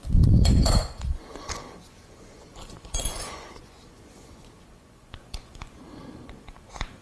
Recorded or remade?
remade